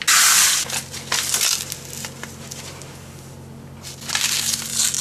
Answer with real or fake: real